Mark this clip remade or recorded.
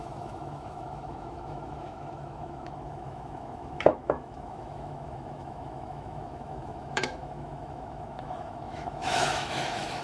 remade